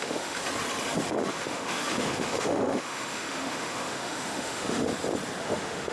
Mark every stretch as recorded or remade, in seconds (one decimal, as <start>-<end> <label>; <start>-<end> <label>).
0.0-0.4 remade; 0.4-1.3 recorded; 1.3-4.9 remade; 4.9-5.4 recorded; 5.4-5.9 remade